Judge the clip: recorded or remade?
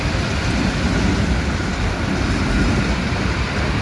recorded